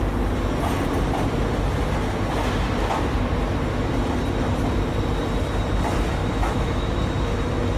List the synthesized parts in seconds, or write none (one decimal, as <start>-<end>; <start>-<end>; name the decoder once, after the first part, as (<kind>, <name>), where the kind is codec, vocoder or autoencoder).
6.2-6.9 (autoencoder, DAC-VAE)

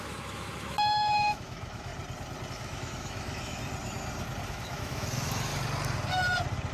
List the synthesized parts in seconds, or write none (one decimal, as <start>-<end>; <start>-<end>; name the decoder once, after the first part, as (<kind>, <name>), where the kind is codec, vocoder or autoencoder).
0.0-1.9 (autoencoder, DAC-VAE); 2.5-3.6; 4.5-5.5

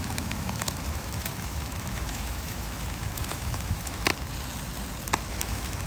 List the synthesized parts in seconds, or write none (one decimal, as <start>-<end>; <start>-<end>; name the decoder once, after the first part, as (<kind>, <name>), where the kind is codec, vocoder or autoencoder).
0.0-4.1 (autoencoder, DAC-VAE); 5.3-5.9

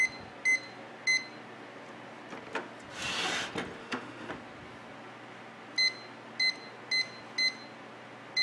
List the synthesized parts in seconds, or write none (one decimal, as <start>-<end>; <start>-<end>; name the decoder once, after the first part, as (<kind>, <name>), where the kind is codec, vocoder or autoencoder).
3.8-4.3 (autoencoder, DAC-VAE)

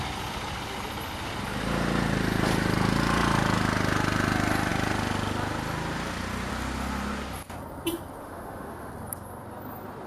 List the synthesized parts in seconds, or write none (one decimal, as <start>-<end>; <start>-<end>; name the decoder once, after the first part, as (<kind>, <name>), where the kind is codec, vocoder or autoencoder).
8.2-8.9 (autoencoder, DAC-VAE)

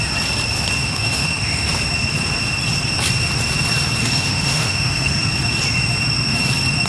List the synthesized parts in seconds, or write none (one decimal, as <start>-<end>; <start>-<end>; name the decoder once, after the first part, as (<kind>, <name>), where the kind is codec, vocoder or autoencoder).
0.8-1.7 (autoencoder, DAC-VAE); 4.0-5.2